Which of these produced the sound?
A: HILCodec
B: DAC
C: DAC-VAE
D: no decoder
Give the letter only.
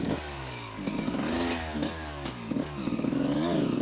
B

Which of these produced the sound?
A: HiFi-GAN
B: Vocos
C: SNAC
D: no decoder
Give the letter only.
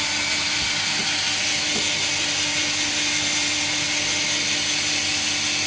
D